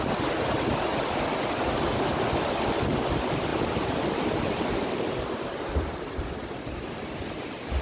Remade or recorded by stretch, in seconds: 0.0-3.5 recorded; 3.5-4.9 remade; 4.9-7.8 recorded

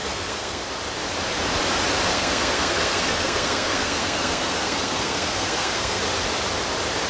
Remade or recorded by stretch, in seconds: 0.0-0.6 remade; 0.6-2.1 recorded; 2.1-6.0 remade; 6.0-7.1 recorded

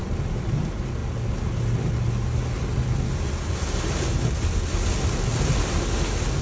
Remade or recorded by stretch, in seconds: 0.0-6.4 recorded

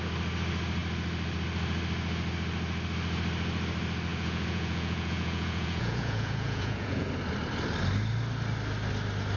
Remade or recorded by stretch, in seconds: 0.0-4.1 recorded; 4.1-7.1 remade; 7.1-9.4 recorded

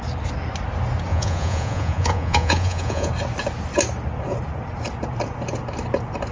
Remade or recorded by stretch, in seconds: 0.0-1.1 recorded; 1.1-3.1 remade; 3.1-6.3 recorded

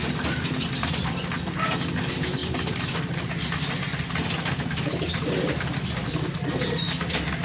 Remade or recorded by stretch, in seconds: 0.0-7.4 recorded

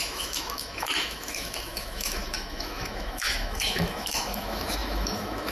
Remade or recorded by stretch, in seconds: 0.0-5.5 remade